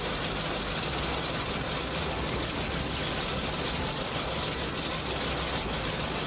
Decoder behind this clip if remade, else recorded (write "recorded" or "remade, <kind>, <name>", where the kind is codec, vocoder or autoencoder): recorded